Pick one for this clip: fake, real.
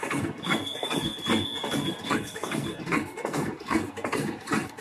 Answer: fake